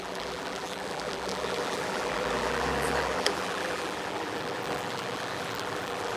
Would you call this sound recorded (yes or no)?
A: no